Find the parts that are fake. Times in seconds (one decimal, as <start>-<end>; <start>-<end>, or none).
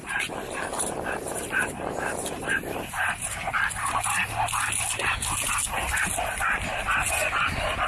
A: 0.0-4.4